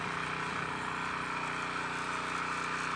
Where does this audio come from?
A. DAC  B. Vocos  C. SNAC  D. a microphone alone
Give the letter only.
D